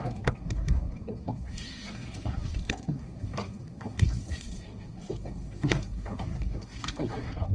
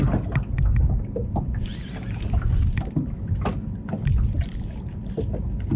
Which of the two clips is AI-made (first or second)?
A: first